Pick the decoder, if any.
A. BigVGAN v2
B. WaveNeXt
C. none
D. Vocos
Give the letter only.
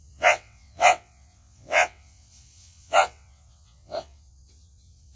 B